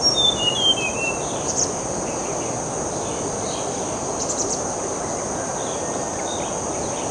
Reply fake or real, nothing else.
real